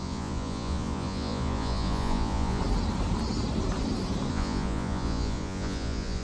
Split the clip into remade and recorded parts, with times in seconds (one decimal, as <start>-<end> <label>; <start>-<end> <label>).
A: 0.0-2.6 remade; 2.6-4.3 recorded; 4.3-6.2 remade